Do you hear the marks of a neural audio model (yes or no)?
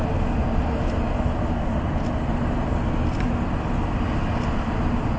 no